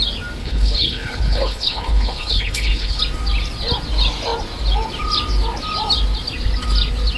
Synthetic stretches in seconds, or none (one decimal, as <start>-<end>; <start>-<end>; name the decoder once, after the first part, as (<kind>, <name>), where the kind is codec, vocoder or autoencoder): 0.4-3.0 (codec, HILCodec)